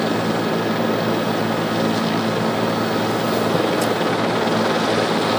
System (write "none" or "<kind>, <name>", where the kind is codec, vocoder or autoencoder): none